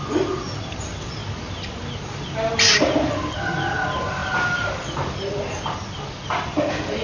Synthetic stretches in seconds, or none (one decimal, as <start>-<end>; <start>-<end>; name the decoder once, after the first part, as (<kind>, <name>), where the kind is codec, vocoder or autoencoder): none